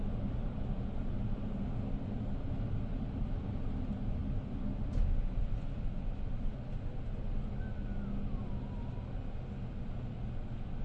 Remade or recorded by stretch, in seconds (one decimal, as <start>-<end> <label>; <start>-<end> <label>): 0.0-10.8 recorded